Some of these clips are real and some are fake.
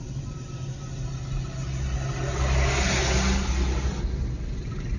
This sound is real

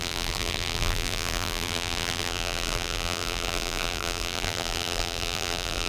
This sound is fake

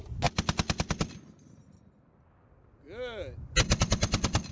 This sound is real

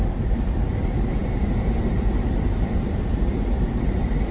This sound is fake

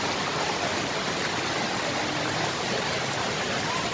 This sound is real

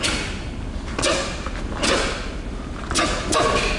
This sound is real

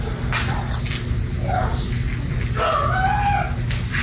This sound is real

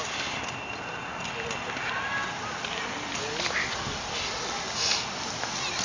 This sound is real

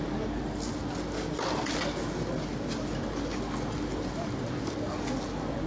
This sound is real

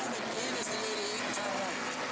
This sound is real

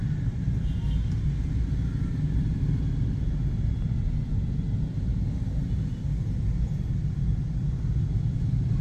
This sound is real